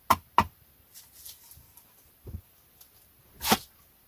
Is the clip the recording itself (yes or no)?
yes